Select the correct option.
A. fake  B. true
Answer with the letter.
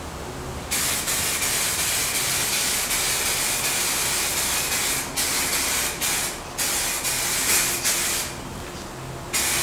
B